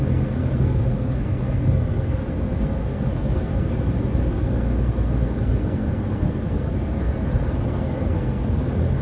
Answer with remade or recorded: remade